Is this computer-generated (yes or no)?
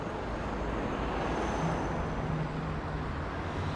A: no